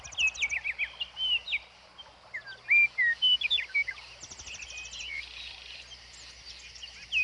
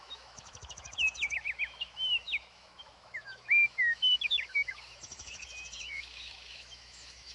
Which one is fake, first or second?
second